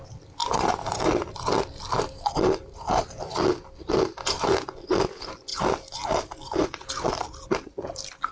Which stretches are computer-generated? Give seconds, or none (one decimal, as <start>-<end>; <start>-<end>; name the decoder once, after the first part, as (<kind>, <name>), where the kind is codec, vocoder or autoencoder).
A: 0.0-0.4 (vocoder, BigVGAN v2); 1.5-5.5; 6.9-8.3